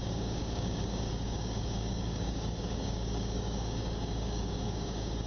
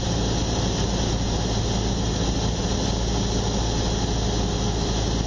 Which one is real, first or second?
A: second